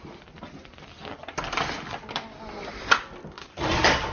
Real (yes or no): yes